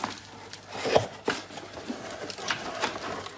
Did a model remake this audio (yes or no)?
no